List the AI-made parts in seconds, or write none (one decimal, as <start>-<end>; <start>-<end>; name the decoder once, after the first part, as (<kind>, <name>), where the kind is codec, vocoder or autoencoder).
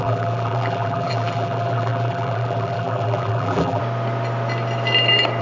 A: 0.0-3.8 (vocoder, BigVGAN v2)